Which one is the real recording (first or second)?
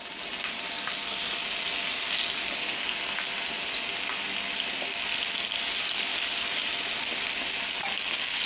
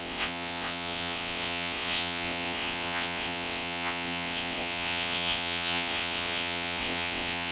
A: first